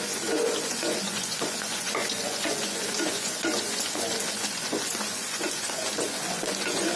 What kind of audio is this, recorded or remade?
remade